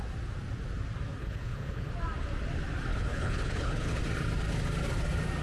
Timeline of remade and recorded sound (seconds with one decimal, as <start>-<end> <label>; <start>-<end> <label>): 0.0-1.2 recorded; 1.2-1.9 remade; 1.9-2.9 recorded; 2.9-4.0 remade; 4.0-5.4 recorded